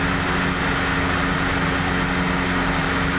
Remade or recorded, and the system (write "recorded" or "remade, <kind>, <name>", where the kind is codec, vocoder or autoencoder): recorded